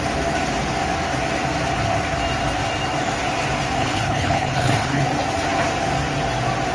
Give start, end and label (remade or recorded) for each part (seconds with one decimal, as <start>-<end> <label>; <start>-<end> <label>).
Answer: 0.0-3.8 recorded; 3.8-5.0 remade; 5.0-6.7 recorded